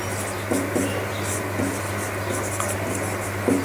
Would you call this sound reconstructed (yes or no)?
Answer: no